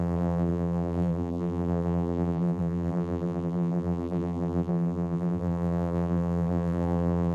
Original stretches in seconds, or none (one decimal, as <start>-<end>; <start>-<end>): none